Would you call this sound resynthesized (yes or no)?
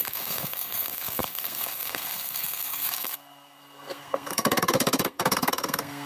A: yes